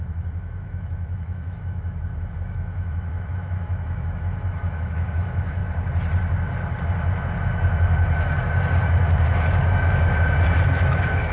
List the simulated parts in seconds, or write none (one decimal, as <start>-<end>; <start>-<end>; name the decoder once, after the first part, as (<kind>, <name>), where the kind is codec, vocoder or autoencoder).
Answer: 0.0-5.6 (autoencoder, DAC-VAE); 10.7-11.3